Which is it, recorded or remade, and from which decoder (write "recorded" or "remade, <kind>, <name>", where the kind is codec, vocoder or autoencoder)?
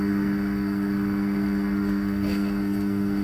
remade, codec, SNAC